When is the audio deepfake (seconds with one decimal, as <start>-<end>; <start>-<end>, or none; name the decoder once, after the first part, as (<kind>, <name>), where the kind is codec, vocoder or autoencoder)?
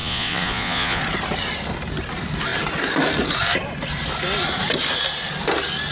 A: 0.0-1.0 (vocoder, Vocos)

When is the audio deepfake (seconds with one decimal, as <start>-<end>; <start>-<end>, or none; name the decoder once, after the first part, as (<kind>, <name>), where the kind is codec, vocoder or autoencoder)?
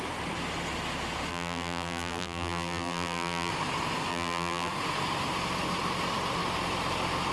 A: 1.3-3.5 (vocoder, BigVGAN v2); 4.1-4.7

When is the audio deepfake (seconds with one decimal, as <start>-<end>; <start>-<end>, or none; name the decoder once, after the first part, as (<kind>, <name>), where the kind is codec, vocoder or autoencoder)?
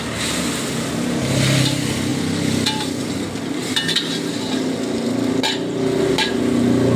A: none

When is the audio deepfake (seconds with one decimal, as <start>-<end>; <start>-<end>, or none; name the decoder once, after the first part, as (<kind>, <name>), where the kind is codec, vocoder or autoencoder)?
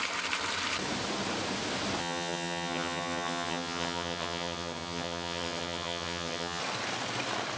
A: 2.0-6.6 (vocoder, HiFi-GAN)